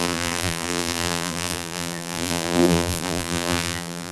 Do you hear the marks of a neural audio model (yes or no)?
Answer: yes